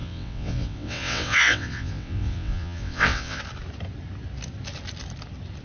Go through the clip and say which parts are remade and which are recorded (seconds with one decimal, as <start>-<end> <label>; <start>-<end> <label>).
0.0-3.4 remade; 3.4-5.6 recorded